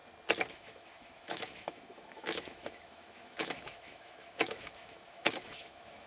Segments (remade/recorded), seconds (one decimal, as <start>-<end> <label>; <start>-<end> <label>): 0.0-0.5 recorded; 0.5-6.1 remade